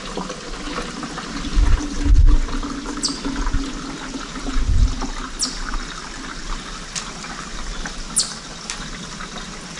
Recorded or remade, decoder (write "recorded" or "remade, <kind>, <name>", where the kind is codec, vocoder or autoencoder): recorded